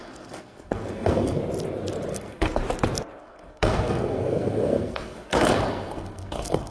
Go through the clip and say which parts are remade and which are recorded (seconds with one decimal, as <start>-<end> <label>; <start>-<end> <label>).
0.0-1.4 remade; 1.4-2.1 recorded; 2.1-2.6 remade; 2.6-3.2 recorded; 3.2-6.7 remade